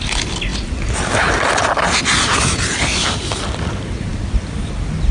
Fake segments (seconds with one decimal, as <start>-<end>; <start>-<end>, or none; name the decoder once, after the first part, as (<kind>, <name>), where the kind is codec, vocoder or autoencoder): none